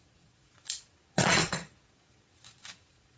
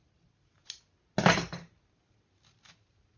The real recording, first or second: second